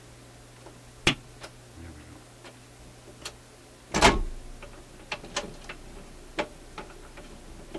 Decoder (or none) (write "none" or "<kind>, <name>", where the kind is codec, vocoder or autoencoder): none